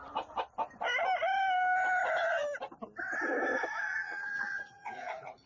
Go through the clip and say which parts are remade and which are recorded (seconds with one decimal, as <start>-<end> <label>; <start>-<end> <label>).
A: 0.0-3.9 recorded; 3.9-5.5 remade